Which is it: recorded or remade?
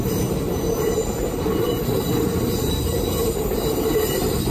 remade